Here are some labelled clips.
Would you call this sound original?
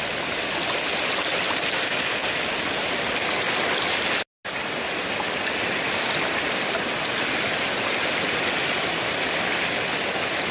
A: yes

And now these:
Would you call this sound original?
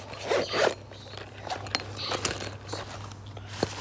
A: yes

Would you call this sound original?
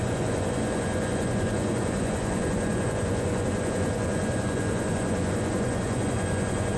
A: no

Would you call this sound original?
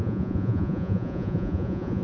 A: no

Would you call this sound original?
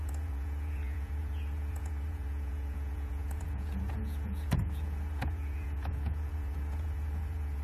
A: no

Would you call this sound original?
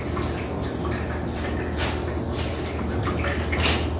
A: yes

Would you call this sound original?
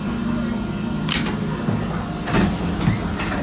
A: yes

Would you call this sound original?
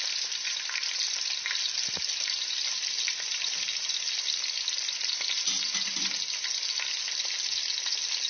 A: yes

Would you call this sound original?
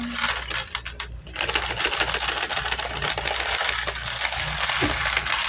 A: yes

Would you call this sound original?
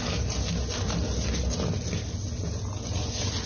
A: yes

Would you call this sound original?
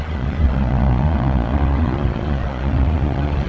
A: no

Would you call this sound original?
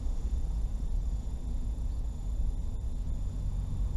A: no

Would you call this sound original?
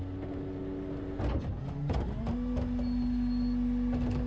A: yes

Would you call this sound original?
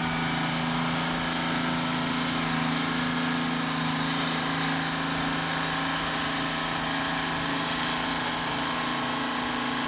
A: yes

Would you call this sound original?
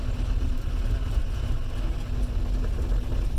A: yes